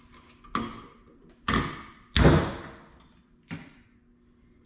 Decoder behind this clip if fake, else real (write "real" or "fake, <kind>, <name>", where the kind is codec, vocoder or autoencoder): real